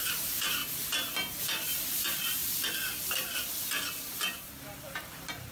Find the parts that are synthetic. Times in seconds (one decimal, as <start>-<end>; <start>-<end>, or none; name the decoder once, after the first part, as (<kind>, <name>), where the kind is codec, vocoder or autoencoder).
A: 0.0-0.6 (vocoder, BigVGAN v2); 1.4-2.4; 4.5-5.5